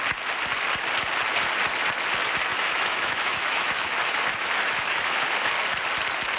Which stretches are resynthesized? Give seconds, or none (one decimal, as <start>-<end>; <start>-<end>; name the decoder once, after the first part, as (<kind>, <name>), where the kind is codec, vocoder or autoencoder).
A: 2.5-5.5 (autoencoder, DAC-VAE)